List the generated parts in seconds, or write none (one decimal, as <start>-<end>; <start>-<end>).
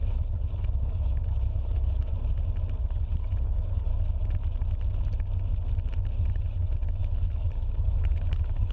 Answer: 0.0-2.1; 2.8-3.9; 6.2-8.7